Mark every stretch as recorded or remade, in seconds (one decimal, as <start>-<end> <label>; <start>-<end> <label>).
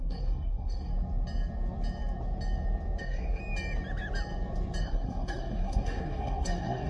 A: 0.0-0.9 remade; 0.9-3.0 recorded; 3.0-3.4 remade; 3.4-4.8 recorded; 4.8-6.9 remade